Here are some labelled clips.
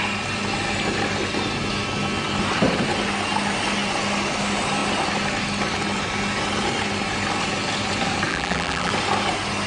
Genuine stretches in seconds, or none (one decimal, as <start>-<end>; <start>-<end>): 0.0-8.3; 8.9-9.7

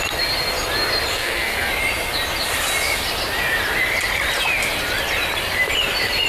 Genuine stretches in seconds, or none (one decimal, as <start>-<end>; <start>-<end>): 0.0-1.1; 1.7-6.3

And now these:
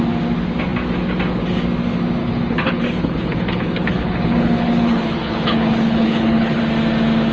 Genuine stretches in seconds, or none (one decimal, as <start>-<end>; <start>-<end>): 0.0-2.2; 6.6-7.3

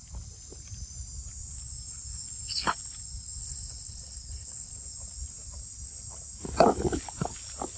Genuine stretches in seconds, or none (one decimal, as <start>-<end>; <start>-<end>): 0.0-3.4; 4.7-7.8